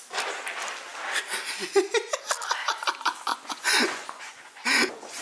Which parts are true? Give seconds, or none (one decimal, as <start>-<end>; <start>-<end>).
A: 0.0-3.3